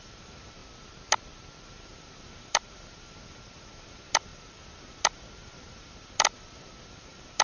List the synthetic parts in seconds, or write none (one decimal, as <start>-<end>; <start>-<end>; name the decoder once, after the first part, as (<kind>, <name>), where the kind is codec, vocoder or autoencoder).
0.0-0.6 (vocoder, BigVGAN v2); 1.7-7.4